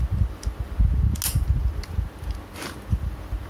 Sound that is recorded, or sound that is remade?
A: recorded